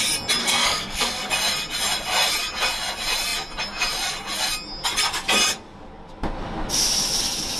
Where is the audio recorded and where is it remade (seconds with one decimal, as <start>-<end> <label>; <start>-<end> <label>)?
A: 0.0-0.4 recorded; 0.4-1.3 remade; 1.3-7.6 recorded